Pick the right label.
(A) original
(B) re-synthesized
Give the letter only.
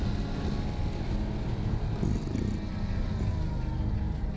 A